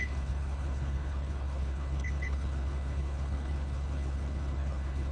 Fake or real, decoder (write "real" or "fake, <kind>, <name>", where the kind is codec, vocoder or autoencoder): fake, codec, HILCodec